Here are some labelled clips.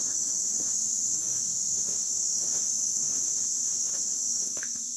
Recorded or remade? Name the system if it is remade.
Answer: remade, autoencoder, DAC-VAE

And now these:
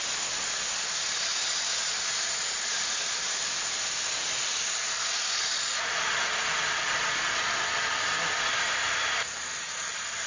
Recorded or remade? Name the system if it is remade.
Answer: recorded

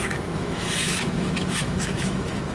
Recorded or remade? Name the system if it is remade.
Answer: remade, autoencoder, DAC-VAE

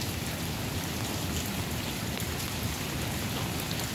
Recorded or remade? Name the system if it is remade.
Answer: recorded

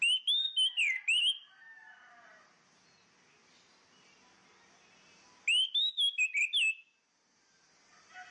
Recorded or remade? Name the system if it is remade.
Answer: recorded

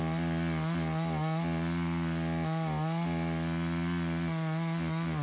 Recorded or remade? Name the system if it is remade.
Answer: recorded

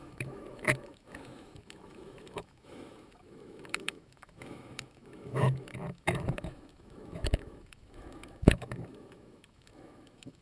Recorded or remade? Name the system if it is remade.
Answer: remade, autoencoder, DAC-VAE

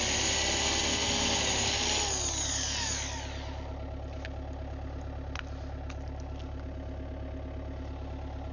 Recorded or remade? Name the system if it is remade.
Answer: recorded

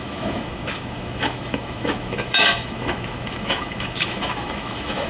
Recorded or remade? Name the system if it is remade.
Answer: remade, autoencoder, DAC-VAE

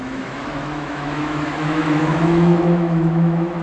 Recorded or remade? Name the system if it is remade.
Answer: remade, autoencoder, DAC-VAE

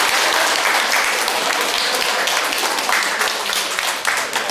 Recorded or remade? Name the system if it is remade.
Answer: recorded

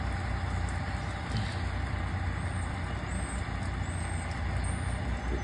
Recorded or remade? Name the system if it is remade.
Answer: recorded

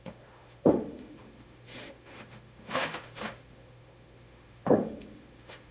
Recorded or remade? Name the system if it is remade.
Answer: remade, autoencoder, DAC-VAE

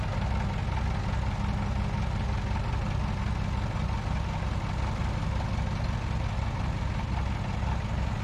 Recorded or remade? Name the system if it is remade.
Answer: recorded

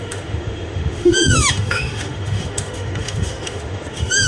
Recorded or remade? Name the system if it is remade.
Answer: remade, autoencoder, DAC-VAE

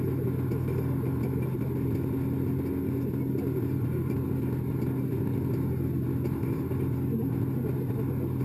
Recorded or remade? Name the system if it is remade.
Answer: recorded